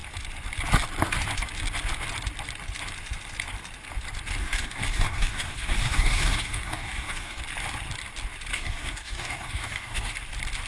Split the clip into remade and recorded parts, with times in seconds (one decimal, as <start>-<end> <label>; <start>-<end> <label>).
0.0-4.4 recorded; 4.4-7.4 remade; 7.4-8.5 recorded; 8.5-10.1 remade; 10.1-10.7 recorded